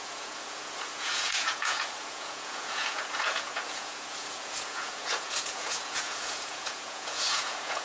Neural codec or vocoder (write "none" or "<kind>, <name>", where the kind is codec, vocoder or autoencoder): vocoder, Vocos